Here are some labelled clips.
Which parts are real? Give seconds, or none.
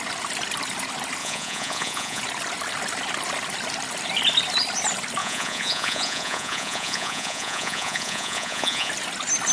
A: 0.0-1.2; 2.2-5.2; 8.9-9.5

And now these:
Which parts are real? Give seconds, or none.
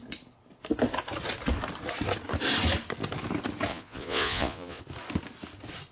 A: 0.0-3.7; 4.8-5.9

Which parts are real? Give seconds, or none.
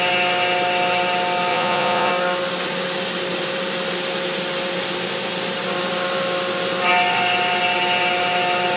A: 0.0-1.5; 2.1-8.8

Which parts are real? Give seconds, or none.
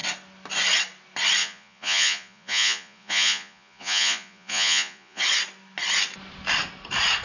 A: 0.0-1.4; 5.2-7.2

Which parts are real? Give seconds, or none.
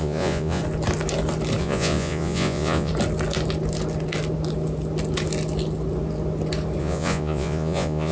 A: 0.6-1.6; 2.9-6.8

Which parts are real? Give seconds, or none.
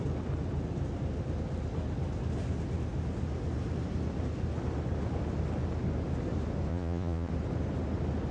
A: 0.0-6.7; 7.3-8.3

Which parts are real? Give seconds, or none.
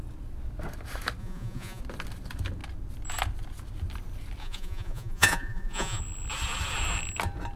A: 0.0-1.2; 1.8-4.4; 6.0-7.6